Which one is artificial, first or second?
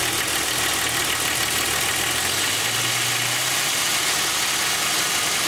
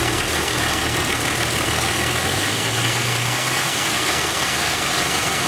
second